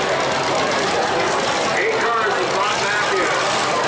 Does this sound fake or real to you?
real